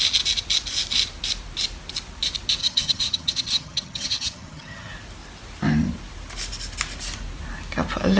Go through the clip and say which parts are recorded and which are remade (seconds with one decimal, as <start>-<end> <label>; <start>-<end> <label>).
0.0-2.6 recorded; 2.6-4.9 remade; 4.9-8.2 recorded